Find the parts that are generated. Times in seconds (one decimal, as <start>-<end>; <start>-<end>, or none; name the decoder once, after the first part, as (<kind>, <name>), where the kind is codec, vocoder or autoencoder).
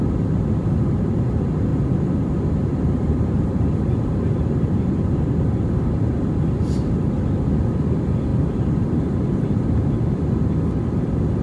1.7-6.3 (vocoder, BigVGAN v2); 8.3-9.8